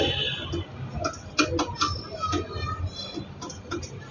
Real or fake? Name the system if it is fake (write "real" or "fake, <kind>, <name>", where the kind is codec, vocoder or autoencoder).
real